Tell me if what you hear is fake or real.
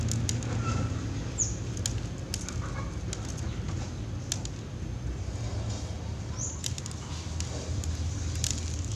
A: real